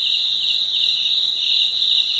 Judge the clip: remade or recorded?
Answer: recorded